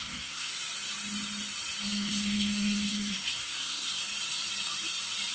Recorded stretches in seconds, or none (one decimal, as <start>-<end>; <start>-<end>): 0.5-1.8; 3.9-5.3